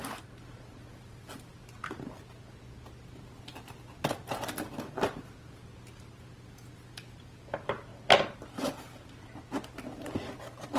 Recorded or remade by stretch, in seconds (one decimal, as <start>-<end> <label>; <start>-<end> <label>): 0.0-7.9 recorded; 7.9-9.9 remade; 9.9-10.8 recorded